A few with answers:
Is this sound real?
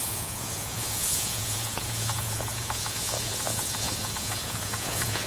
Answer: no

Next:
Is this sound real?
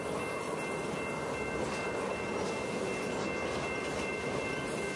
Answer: yes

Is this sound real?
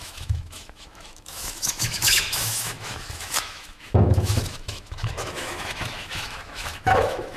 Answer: no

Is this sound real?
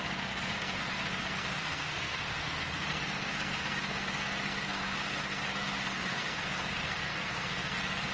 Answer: no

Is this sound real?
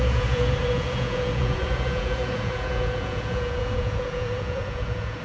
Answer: no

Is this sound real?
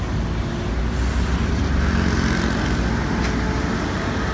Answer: yes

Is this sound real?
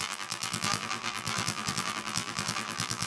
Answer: no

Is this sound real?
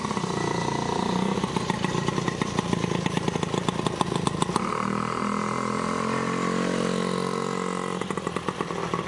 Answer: yes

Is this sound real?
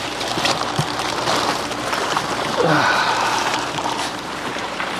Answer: no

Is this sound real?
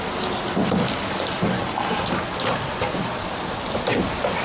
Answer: yes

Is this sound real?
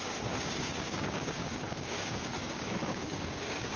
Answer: no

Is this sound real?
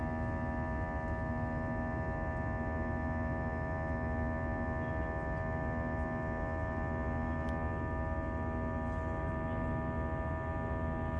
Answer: yes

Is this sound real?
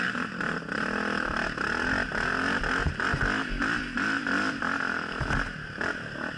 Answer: yes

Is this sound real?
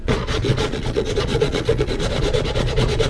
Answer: no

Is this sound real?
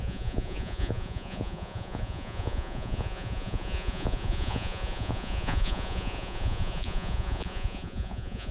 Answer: no